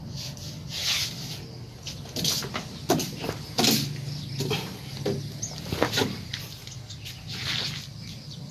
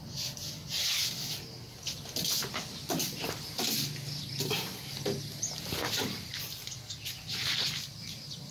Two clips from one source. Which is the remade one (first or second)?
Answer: second